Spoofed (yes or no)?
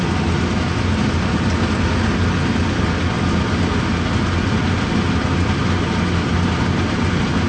no